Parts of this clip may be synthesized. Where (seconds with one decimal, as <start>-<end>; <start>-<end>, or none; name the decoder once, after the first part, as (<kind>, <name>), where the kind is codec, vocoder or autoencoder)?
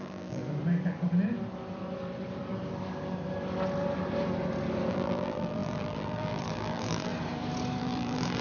0.0-0.4 (vocoder, BigVGAN v2); 4.9-7.1; 7.8-8.4